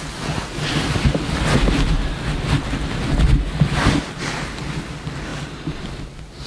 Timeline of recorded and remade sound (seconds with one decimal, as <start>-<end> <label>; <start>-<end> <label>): 0.0-6.5 recorded